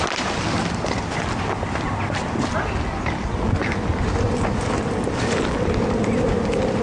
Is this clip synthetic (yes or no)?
no